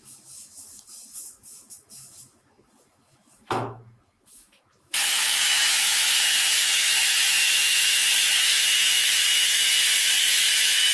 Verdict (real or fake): fake